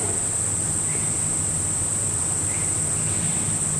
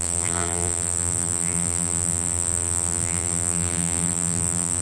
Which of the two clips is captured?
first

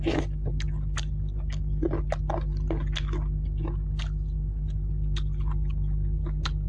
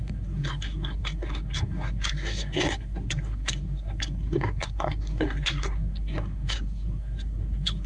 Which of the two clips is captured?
first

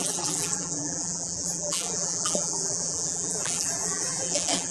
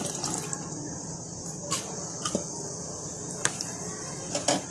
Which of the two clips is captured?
second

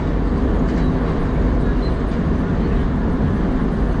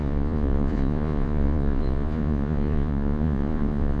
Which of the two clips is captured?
first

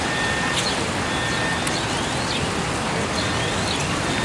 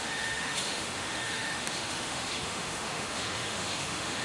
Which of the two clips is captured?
first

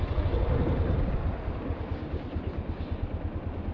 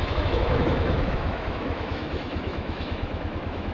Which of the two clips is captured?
first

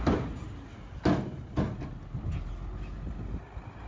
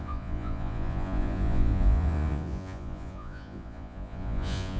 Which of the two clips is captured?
first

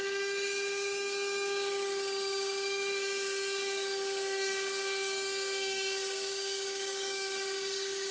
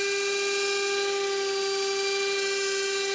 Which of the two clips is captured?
second